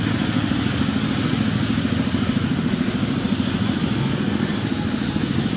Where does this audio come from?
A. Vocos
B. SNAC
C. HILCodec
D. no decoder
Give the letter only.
D